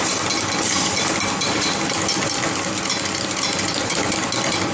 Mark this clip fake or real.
real